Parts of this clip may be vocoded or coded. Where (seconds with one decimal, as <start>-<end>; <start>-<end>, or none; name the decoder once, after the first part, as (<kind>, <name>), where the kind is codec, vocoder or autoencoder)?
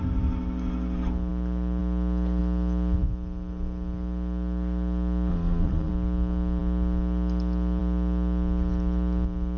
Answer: 5.3-5.9 (vocoder, Vocos)